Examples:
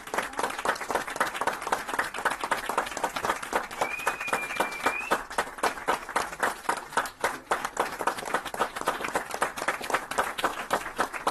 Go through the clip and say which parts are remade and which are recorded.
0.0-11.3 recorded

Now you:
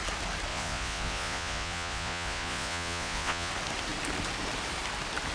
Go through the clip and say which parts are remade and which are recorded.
0.0-0.5 recorded; 0.5-3.5 remade; 3.5-5.3 recorded

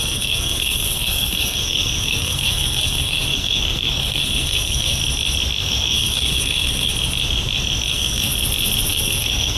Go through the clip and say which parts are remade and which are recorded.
0.0-5.0 remade; 5.0-5.6 recorded; 5.6-6.9 remade; 6.9-7.9 recorded; 7.9-8.3 remade; 8.3-8.9 recorded; 8.9-9.6 remade